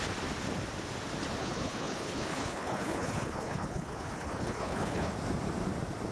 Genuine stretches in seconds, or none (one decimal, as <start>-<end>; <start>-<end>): 0.0-1.4; 5.1-6.1

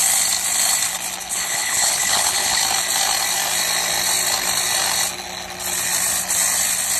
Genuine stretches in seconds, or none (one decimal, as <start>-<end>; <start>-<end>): 0.0-1.2; 2.6-7.0

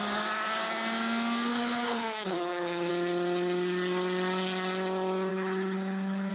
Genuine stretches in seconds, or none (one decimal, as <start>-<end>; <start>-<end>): 0.0-1.5; 2.9-5.3